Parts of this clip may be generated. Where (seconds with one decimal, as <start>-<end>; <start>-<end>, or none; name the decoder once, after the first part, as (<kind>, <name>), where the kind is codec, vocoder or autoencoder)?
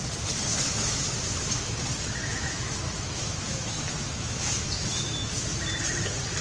0.5-1.8 (autoencoder, DAC-VAE); 2.2-5.6